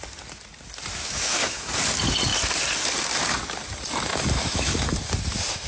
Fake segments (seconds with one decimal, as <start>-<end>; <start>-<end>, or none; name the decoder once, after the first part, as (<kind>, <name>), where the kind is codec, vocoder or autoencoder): 1.0-1.7 (autoencoder, DAC-VAE); 4.1-4.7